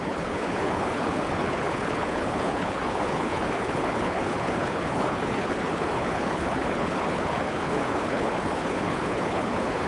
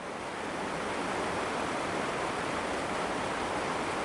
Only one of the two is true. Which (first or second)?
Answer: second